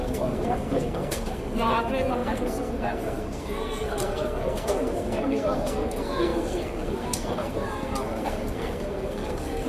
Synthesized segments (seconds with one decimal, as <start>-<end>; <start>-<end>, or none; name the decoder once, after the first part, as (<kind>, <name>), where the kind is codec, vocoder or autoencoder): 0.0-9.7 (codec, SNAC)